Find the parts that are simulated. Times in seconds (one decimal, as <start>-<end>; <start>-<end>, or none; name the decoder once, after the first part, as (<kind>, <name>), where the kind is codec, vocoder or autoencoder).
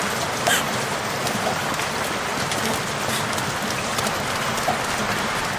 none